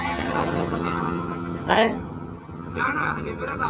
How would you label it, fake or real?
fake